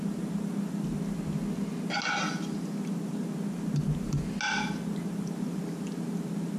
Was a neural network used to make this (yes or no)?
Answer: no